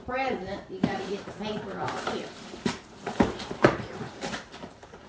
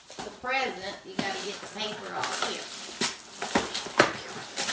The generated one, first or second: first